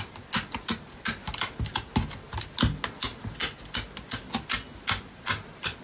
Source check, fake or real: real